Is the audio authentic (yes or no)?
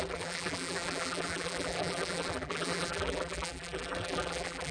no